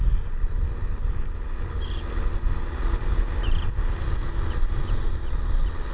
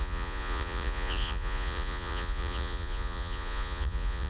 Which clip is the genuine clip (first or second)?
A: first